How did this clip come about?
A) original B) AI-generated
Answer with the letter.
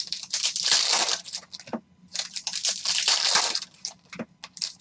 A